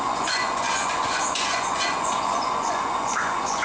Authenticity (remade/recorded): remade